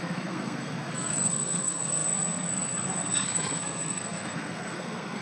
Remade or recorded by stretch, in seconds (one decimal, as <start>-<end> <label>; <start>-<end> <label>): 0.0-5.2 remade